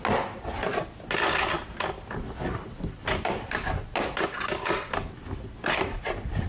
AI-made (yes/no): no